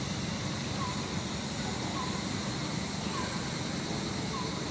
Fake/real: real